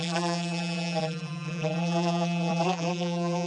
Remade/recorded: remade